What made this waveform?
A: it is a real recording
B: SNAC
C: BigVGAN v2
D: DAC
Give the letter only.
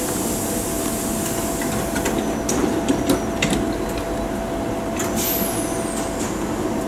A